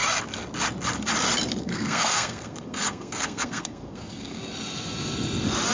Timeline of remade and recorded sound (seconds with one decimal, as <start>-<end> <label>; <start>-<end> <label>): 0.0-1.6 recorded; 1.6-4.4 remade; 4.4-5.7 recorded